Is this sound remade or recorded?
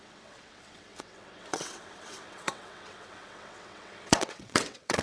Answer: remade